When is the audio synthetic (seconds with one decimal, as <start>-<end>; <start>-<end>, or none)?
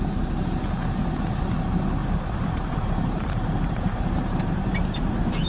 2.0-5.5